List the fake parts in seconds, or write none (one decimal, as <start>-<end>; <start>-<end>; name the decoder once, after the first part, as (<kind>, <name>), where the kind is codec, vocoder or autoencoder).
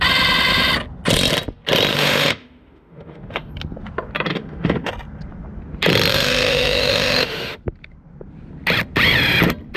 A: 1.9-3.5 (autoencoder, DAC-VAE); 4.3-4.9; 6.1-7.6